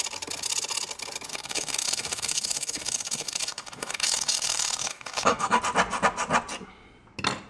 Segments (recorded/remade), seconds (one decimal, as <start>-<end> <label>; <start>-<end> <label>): 0.0-1.3 recorded; 1.3-5.6 remade; 5.6-7.5 recorded